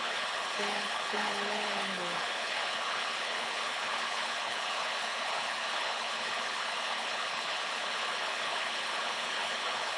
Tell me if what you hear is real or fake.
fake